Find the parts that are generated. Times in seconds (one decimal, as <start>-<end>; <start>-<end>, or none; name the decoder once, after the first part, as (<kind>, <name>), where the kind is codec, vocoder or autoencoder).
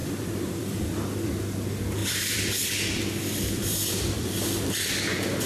0.0-1.3 (vocoder, BigVGAN v2); 2.0-5.5